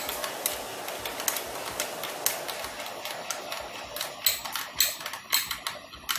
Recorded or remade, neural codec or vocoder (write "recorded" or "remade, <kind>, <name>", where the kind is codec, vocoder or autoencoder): recorded